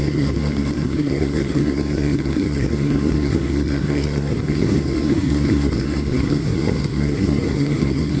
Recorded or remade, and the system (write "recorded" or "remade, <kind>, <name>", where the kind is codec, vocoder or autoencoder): remade, codec, SNAC